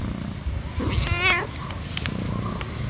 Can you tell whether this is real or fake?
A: real